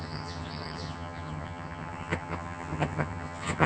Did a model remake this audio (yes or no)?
yes